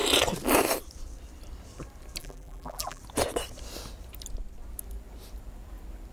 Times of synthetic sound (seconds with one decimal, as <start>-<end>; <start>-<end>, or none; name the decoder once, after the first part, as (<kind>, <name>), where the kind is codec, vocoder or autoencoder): 2.2-3.0 (vocoder, BigVGAN v2)